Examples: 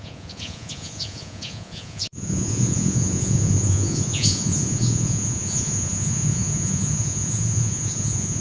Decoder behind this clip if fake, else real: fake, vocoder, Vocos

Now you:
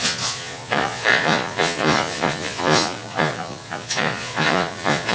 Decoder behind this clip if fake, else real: fake, vocoder, Vocos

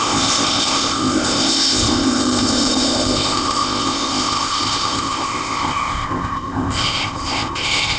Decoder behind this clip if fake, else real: fake, codec, ZipCodec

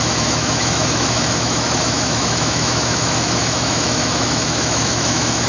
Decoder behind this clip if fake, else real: fake, autoencoder, DAC-VAE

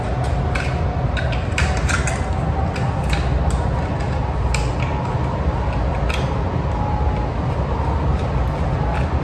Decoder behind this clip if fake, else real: real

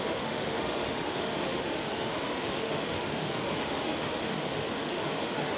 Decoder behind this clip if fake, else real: fake, autoencoder, DAC-VAE